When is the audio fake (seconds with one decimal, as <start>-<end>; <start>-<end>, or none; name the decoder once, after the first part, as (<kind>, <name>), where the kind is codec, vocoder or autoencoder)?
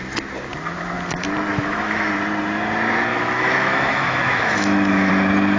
1.5-2.1 (autoencoder, DAC-VAE); 3.1-5.1